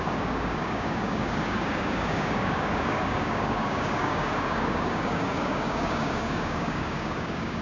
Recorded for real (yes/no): no